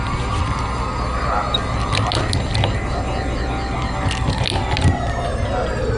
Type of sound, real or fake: real